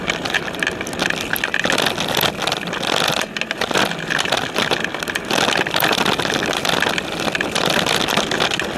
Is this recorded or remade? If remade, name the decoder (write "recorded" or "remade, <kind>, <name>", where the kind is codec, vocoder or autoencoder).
recorded